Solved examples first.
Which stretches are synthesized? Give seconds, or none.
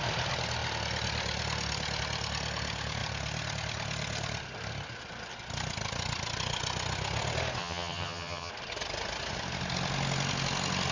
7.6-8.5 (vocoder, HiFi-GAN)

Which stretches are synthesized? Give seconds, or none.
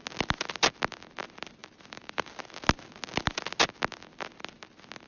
1.6-2.4 (vocoder, BigVGAN v2)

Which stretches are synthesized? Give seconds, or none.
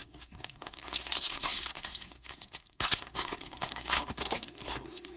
0.0-5.2 (codec, SNAC)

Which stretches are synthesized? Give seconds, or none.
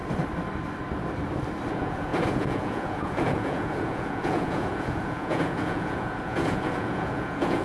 1.7-7.6 (vocoder, Vocos)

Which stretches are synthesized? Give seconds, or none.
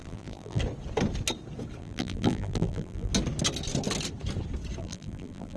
0.0-0.6 (vocoder, BigVGAN v2); 1.8-3.1; 4.8-5.6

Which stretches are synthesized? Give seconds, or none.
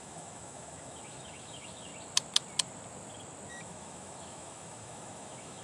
0.0-1.9 (autoencoder, DAC-VAE); 3.5-5.6